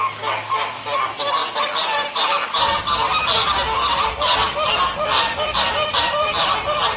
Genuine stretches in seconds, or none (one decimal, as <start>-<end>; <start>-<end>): 0.0-7.0